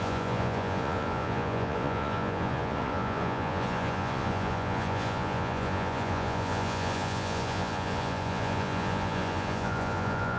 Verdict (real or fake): fake